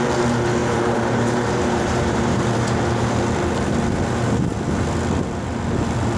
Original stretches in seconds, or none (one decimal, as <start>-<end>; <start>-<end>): 0.0-0.6; 2.4-6.2